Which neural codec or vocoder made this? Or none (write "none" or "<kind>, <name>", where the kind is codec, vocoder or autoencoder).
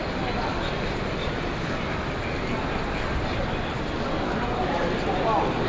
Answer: none